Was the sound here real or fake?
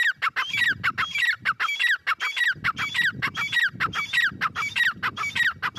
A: real